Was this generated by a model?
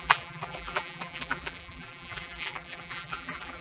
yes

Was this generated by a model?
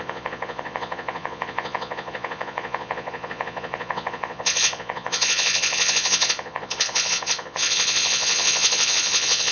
yes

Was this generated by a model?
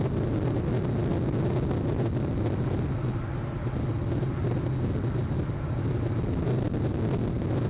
no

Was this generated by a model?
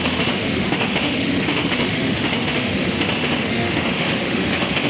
yes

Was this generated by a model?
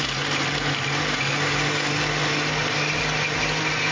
no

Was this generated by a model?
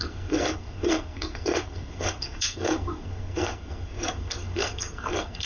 yes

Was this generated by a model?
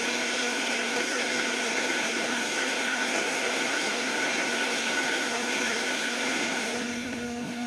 yes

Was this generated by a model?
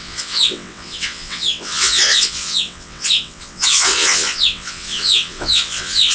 yes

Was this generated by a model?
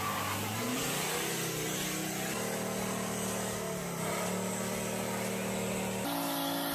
no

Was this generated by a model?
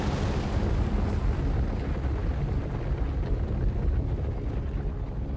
no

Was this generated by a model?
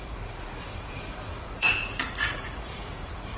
yes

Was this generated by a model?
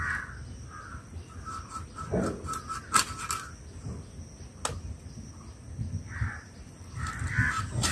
no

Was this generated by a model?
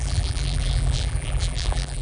yes